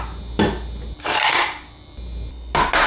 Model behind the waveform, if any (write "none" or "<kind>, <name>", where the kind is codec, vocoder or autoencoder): none